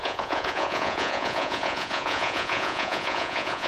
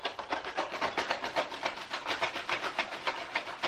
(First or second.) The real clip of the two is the second